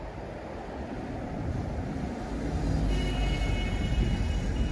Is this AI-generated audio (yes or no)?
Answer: no